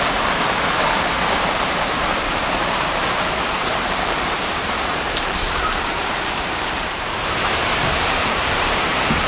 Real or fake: fake